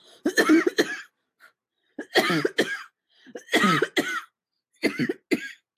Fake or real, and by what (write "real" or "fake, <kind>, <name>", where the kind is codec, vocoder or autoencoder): real